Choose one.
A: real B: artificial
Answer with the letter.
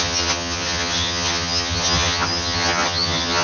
B